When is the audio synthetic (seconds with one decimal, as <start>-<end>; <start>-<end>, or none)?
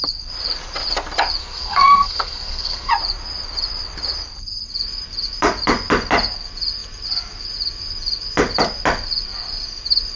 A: 1.4-2.9